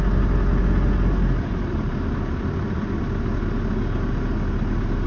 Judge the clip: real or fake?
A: real